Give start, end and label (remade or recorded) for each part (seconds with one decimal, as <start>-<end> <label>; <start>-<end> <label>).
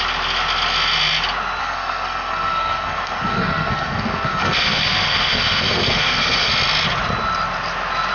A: 0.0-1.6 recorded; 1.6-6.5 remade; 6.5-8.1 recorded